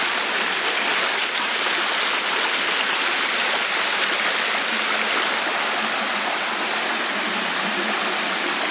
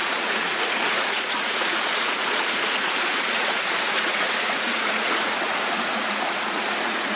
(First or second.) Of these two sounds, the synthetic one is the second